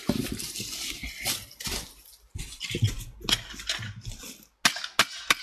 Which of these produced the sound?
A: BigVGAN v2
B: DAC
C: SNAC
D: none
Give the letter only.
D